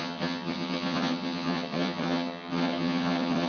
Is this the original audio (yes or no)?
no